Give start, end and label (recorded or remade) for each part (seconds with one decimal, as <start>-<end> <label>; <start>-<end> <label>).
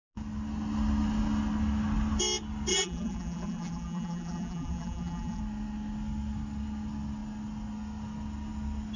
0.0-2.7 recorded; 2.7-5.4 remade; 5.4-9.0 recorded